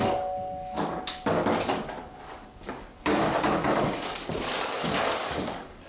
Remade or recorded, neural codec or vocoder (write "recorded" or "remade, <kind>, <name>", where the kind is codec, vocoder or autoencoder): remade, codec, DAC